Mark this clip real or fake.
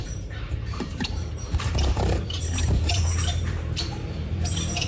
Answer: fake